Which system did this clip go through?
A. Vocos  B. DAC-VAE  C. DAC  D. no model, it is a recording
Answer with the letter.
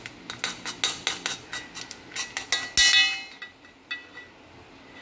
D